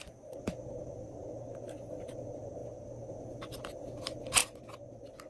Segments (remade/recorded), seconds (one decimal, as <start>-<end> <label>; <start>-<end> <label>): 0.0-1.2 remade; 1.2-2.0 recorded; 2.0-4.4 remade; 4.4-5.3 recorded